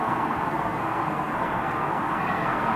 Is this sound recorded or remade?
remade